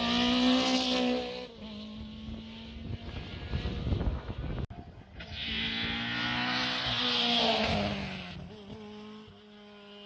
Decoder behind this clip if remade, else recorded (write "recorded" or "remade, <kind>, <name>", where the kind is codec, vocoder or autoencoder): recorded